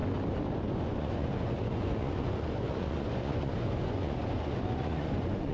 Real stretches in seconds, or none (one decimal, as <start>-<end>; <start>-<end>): 0.0-0.7